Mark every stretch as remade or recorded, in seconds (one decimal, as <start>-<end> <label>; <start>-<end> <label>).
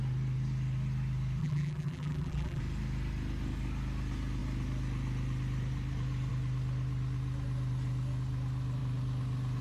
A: 0.0-1.4 recorded; 1.4-2.6 remade; 2.6-9.6 recorded